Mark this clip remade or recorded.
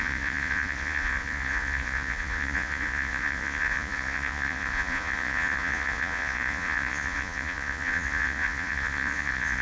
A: remade